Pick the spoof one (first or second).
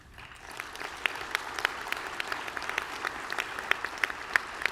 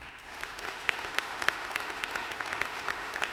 second